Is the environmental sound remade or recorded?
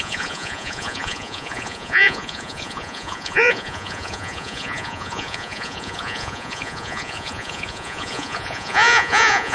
remade